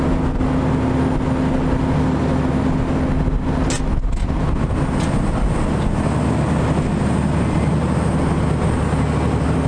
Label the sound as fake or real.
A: real